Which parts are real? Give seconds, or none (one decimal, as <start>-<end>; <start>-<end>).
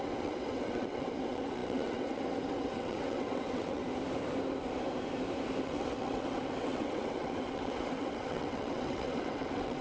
3.8-5.6